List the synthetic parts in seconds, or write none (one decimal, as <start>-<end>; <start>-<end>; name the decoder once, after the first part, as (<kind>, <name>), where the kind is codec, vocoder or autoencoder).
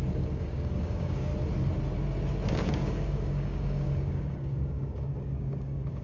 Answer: 0.0-1.3 (codec, DAC); 2.5-6.0